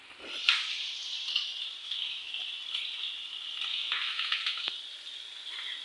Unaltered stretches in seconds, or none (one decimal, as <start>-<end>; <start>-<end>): 0.0-1.8; 2.3-3.7; 4.7-5.8